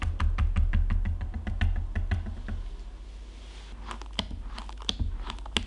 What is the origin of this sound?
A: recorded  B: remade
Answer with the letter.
A